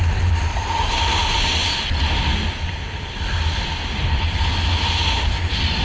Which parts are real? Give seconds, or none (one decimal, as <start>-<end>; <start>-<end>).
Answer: 0.0-5.8